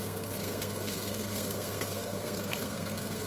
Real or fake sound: fake